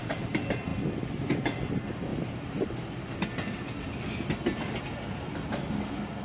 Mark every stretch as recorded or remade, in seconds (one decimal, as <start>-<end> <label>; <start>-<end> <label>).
0.0-6.2 recorded